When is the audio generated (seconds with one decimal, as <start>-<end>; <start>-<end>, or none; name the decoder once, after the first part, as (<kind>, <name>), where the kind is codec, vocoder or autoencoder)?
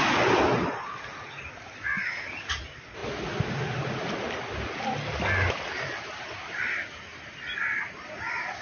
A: none